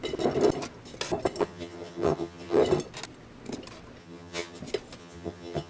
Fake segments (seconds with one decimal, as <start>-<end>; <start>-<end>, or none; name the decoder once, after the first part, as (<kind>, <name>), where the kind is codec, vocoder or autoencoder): 1.4-2.6 (vocoder, HiFi-GAN); 4.0-4.6; 5.0-5.7